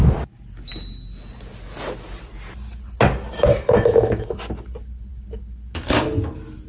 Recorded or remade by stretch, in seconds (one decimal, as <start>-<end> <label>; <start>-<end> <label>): 0.0-3.5 recorded; 3.5-4.4 remade; 4.4-6.7 recorded